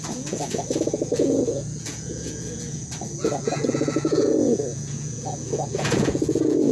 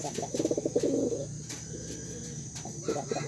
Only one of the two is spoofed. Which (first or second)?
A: first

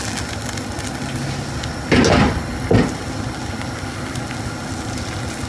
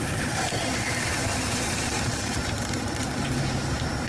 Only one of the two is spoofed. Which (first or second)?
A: second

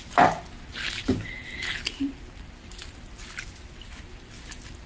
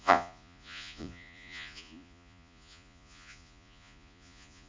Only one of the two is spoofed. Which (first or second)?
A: second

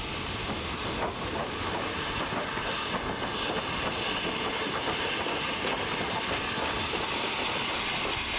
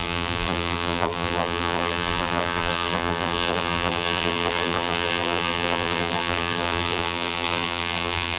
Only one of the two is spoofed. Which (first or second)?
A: second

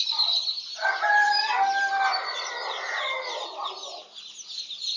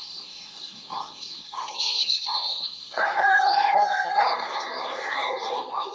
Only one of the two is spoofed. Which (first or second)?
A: second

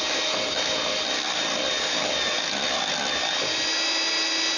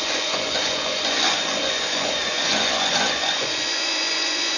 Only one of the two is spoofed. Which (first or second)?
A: second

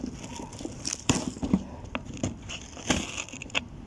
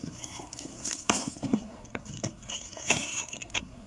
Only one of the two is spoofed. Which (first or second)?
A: second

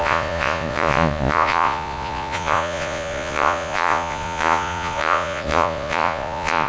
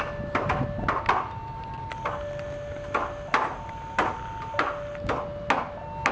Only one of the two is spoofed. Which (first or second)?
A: first